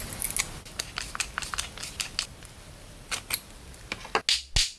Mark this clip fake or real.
real